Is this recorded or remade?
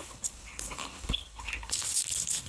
remade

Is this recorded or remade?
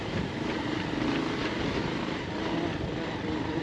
recorded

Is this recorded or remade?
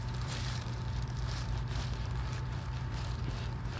remade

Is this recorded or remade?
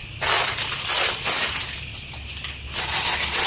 recorded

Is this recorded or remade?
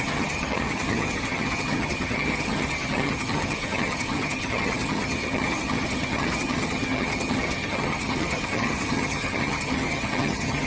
remade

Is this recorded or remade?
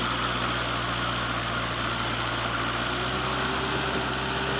recorded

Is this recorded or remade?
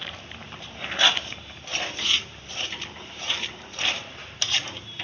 remade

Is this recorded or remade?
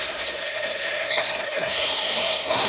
remade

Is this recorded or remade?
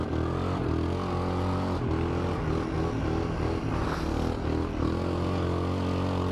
recorded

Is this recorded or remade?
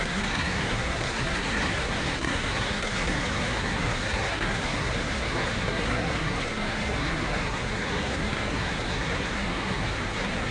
remade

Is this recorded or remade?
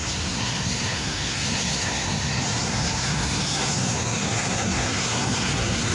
remade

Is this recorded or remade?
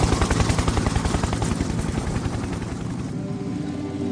recorded